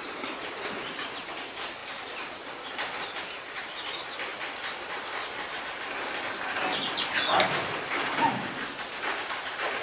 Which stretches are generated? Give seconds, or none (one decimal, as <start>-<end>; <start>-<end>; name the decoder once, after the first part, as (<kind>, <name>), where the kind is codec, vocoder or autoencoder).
none